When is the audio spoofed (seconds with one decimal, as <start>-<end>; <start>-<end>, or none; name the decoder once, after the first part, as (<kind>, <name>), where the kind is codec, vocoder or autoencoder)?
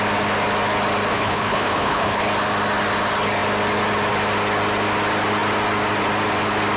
1.1-2.2 (codec, HILCodec)